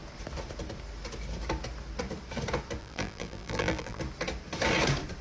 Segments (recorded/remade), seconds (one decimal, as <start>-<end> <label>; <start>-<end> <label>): 0.0-2.8 recorded; 2.8-4.0 remade; 4.0-5.2 recorded